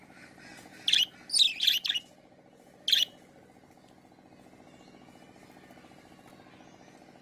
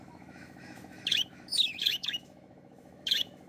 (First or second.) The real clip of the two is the first